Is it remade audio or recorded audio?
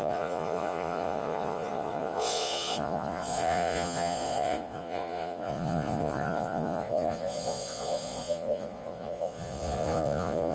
remade